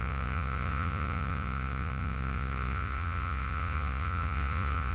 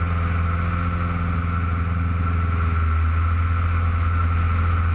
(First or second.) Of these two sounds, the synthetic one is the first